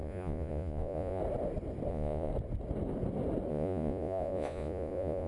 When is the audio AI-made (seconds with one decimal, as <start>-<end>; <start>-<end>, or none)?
0.0-1.2; 1.9-2.3; 3.5-5.3